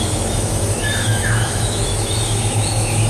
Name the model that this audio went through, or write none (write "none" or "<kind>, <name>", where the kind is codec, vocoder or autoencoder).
autoencoder, DAC-VAE